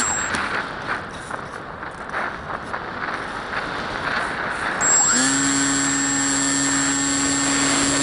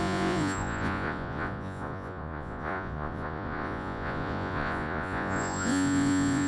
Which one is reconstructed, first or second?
second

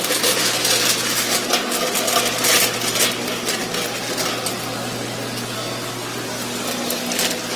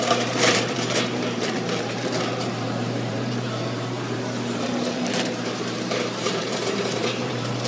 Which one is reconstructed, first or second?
second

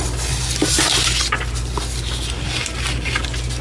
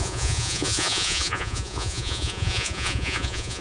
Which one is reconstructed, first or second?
second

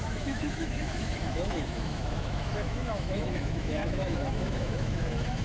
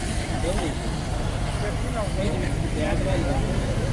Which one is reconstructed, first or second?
first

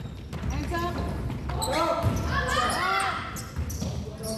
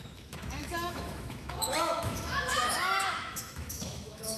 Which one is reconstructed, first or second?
second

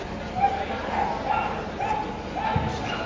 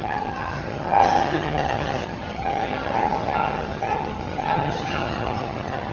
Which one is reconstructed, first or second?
second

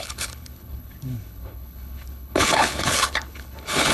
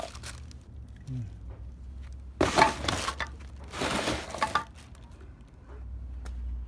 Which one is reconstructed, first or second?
first